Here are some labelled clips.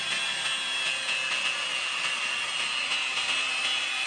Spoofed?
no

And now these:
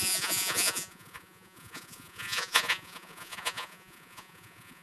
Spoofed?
yes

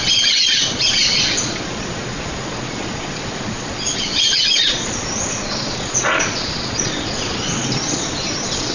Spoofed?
yes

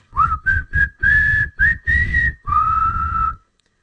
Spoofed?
yes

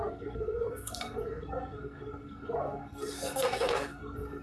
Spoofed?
yes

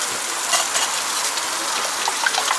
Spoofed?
no